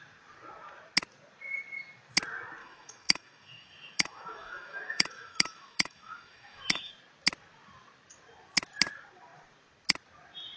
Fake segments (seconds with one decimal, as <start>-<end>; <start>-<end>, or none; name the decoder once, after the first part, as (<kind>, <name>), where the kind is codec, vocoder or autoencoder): 2.6-6.9 (autoencoder, DAC-VAE)